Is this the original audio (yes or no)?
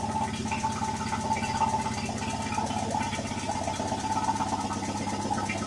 yes